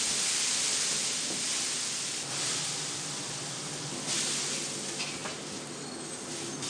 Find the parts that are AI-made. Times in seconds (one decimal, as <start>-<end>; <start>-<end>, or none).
none